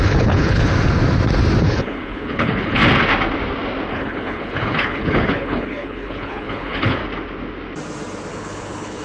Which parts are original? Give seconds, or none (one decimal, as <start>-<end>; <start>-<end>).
0.7-1.6; 2.8-3.9; 7.0-8.3